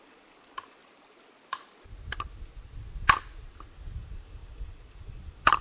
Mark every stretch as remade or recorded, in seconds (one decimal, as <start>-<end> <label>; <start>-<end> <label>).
0.0-0.8 remade; 0.8-4.0 recorded; 4.0-5.6 remade